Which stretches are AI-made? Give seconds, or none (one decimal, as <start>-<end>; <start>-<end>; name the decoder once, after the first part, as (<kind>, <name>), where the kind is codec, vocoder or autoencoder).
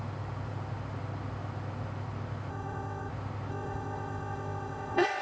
2.5-3.1 (codec, ZipCodec); 3.5-5.2